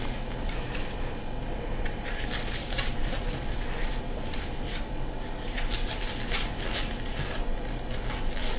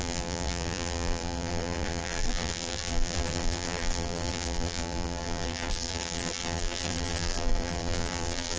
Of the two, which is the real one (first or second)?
first